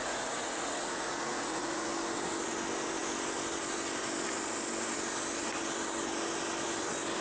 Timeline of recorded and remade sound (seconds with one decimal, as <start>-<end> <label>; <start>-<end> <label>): 0.0-1.9 remade; 1.9-7.2 recorded